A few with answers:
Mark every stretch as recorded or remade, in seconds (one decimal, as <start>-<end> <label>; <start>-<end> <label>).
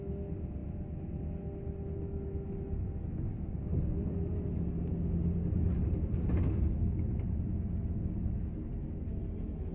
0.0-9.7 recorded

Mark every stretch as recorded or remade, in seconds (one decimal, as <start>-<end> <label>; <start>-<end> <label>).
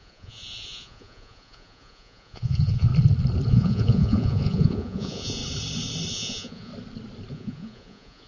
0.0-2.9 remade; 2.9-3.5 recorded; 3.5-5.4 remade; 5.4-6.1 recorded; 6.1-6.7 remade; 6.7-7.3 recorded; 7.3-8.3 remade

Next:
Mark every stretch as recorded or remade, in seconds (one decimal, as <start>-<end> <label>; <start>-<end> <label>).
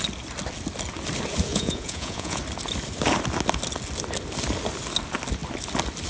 0.0-1.5 recorded; 1.5-2.4 remade; 2.4-6.1 recorded